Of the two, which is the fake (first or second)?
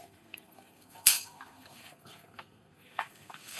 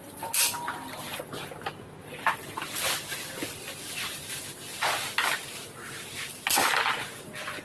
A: first